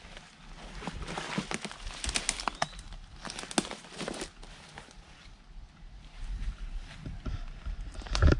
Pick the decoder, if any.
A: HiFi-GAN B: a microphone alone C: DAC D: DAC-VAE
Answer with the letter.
B